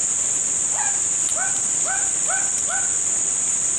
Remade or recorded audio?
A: recorded